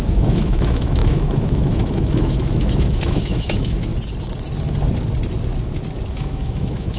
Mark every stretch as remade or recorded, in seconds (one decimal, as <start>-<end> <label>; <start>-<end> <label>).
0.0-3.9 remade; 3.9-6.1 recorded; 6.1-7.0 remade